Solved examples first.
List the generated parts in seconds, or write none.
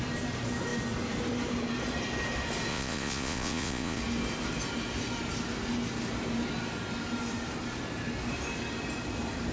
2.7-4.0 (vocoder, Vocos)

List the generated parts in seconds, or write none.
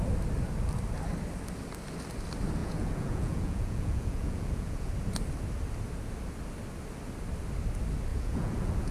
2.6-4.9 (vocoder, Vocos); 8.1-8.9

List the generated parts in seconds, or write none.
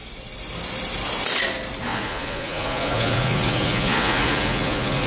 1.9-5.1 (vocoder, Vocos)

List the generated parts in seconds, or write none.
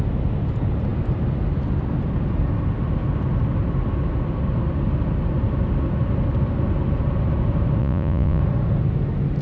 7.8-8.4 (vocoder, Vocos)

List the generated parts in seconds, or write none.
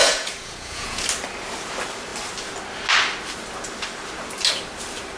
0.0-1.0 (vocoder, Vocos)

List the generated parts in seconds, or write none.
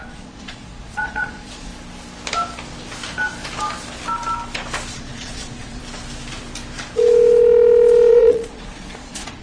0.0-1.7 (vocoder, Vocos); 4.9-5.8; 8.1-9.4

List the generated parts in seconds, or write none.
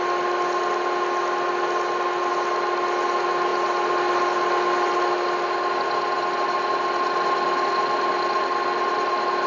none